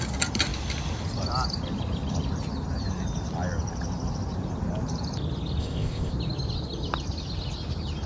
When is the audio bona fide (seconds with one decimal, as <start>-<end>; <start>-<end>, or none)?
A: 0.0-5.6; 6.1-8.1